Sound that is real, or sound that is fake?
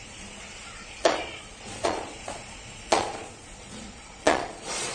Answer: fake